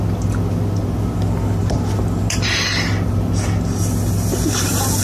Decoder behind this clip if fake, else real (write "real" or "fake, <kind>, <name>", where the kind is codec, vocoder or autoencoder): real